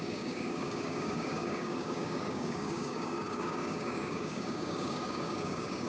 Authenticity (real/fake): fake